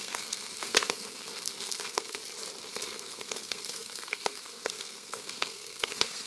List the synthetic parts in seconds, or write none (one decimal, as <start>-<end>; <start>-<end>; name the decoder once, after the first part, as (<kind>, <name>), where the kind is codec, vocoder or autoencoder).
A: 0.0-2.2 (codec, SNAC); 2.7-6.3